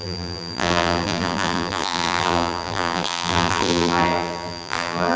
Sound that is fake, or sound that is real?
fake